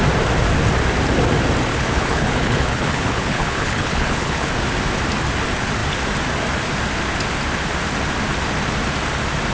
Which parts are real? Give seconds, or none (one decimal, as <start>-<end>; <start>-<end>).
0.0-1.7; 4.5-9.5